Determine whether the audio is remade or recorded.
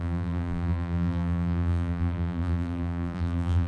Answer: remade